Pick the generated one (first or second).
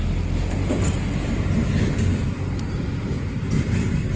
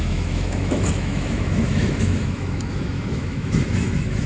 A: second